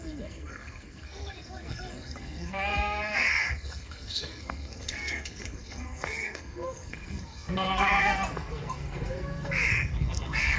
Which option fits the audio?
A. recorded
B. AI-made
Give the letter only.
B